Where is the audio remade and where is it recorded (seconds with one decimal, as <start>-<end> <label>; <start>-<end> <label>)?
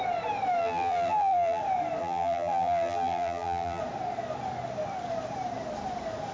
0.0-0.6 recorded; 0.6-1.6 remade; 1.6-2.0 recorded; 2.0-3.8 remade; 3.8-6.3 recorded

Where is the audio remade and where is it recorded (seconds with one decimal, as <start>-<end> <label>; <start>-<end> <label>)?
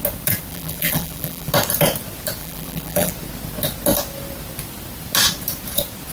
0.0-0.5 recorded; 0.5-1.5 remade; 1.5-2.4 recorded; 2.4-3.1 remade; 3.1-6.1 recorded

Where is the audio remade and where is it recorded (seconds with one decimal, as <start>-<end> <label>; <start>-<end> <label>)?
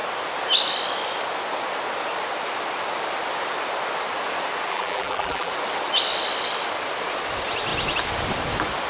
0.0-4.7 recorded; 4.7-5.5 remade; 5.5-8.9 recorded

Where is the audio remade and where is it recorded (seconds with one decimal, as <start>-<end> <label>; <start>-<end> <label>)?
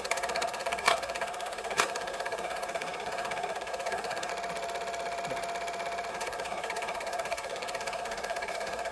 0.0-4.3 remade; 4.3-6.1 recorded; 6.1-8.9 remade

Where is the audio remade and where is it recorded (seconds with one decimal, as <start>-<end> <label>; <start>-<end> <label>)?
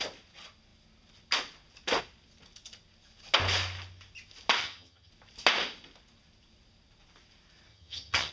0.0-4.6 recorded; 4.6-5.1 remade; 5.1-7.7 recorded; 7.7-8.3 remade